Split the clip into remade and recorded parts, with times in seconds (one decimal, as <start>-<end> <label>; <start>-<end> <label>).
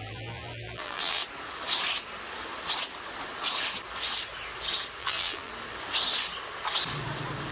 0.0-1.2 remade; 1.2-5.0 recorded; 5.0-5.5 remade; 5.5-7.5 recorded